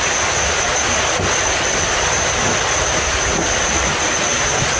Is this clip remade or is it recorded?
recorded